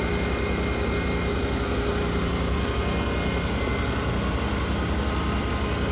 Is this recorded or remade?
recorded